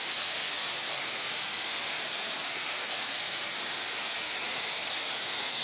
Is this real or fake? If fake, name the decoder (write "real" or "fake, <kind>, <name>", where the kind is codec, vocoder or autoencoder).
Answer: fake, codec, SNAC